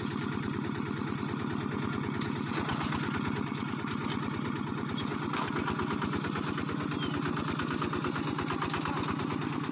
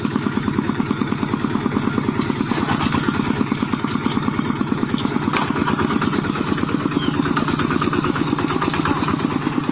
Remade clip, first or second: second